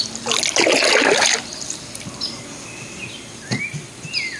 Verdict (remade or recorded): recorded